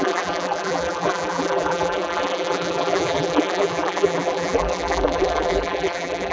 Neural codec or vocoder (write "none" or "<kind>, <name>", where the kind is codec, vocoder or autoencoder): vocoder, BigVGAN v2